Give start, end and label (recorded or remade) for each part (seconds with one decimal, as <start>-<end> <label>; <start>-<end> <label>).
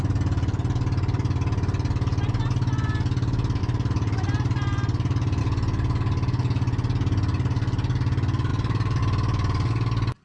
0.0-3.6 recorded; 3.6-5.4 remade; 5.4-8.5 recorded; 8.5-9.0 remade; 9.0-10.2 recorded